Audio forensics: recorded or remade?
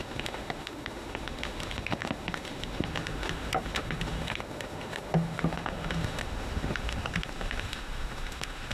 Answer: remade